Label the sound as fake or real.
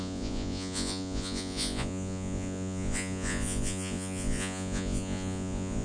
fake